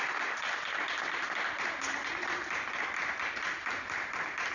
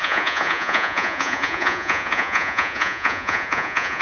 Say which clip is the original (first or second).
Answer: first